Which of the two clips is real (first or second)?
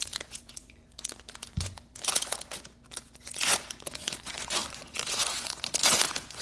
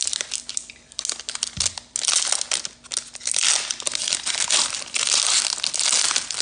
second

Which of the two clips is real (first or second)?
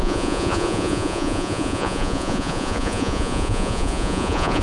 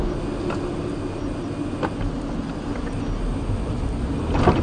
second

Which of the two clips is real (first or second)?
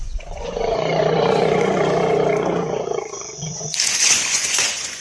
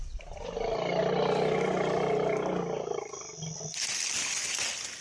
second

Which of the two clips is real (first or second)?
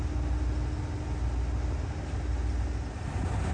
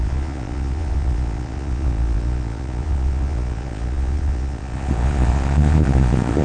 first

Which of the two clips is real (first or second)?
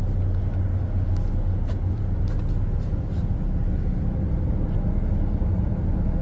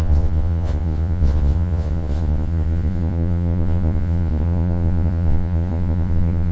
first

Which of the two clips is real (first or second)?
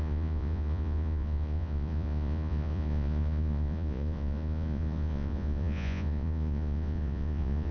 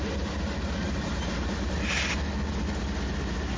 second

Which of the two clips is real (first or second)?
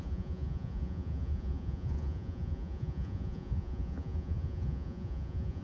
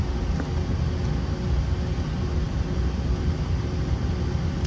second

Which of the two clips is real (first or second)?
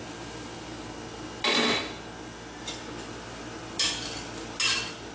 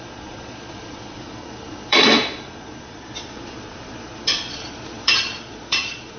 first